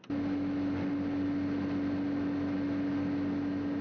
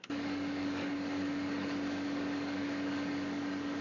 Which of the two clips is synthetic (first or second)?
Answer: second